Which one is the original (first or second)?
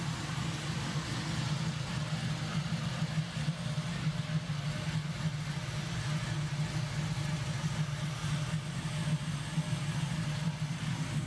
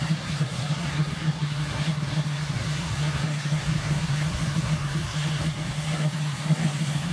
first